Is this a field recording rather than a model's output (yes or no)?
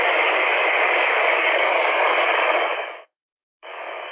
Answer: no